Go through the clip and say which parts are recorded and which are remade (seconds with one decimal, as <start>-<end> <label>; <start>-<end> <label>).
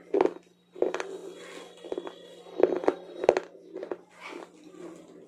0.0-5.3 recorded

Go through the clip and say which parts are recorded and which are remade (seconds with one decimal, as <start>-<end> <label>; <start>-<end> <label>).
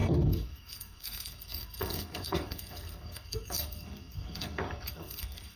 0.0-5.6 remade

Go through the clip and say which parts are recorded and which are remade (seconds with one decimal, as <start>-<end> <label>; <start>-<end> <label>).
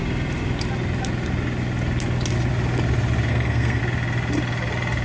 0.0-3.3 recorded; 3.3-3.8 remade; 3.8-5.0 recorded